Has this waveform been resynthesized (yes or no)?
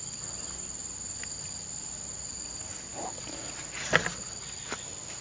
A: no